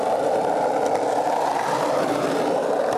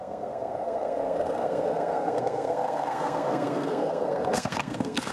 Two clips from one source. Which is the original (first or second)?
first